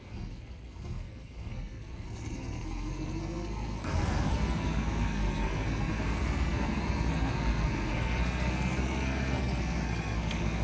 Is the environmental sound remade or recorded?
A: remade